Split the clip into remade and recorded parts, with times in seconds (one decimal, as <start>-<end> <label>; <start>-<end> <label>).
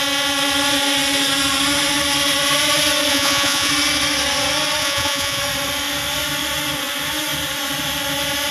0.0-3.1 recorded; 3.1-3.7 remade; 3.7-4.8 recorded; 4.8-5.4 remade; 5.4-8.5 recorded